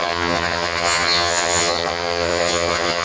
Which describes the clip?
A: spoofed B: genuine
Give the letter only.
A